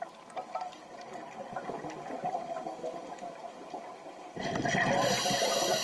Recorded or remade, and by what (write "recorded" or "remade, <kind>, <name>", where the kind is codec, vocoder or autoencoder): recorded